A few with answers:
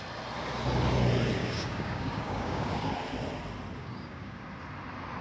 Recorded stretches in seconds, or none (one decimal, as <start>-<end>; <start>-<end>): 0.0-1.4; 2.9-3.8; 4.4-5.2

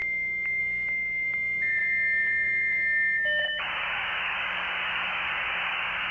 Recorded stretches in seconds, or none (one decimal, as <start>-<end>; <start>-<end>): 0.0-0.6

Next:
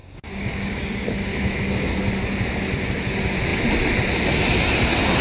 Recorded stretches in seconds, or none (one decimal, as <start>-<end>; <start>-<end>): 1.7-5.2

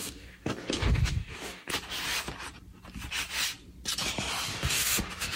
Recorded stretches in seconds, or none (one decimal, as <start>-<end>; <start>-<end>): 1.7-4.5